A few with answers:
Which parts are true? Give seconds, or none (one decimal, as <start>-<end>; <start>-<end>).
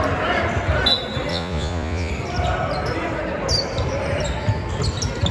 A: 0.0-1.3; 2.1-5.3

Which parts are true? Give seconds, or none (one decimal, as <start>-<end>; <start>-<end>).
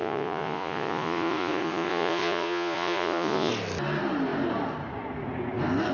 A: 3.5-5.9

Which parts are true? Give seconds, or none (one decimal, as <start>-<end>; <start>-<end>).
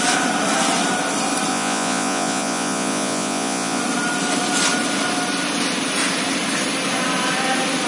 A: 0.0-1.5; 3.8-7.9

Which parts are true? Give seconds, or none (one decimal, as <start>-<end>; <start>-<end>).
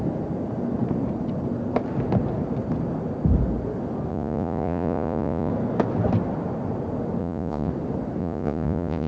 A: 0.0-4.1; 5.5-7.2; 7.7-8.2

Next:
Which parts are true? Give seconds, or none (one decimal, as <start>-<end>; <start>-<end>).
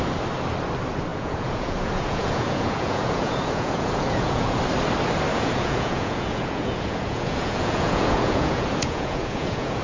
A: 0.0-1.1; 4.6-5.3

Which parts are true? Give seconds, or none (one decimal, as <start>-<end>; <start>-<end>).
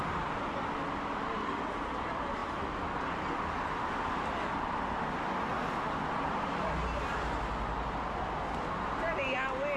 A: 0.0-9.8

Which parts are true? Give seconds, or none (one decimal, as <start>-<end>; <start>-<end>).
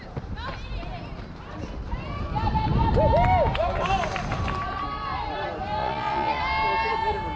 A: 0.0-5.8; 6.4-7.4